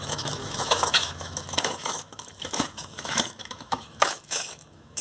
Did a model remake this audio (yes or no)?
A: yes